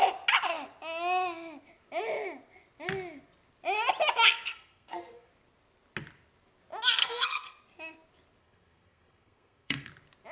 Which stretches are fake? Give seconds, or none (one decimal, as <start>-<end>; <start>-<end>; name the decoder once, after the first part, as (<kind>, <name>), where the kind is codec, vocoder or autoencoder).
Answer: 4.5-5.3 (codec, SNAC); 7.0-7.6; 8.4-9.9